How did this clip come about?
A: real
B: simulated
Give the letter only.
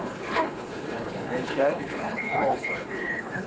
B